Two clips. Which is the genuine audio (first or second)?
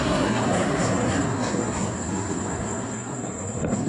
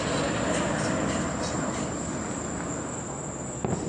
second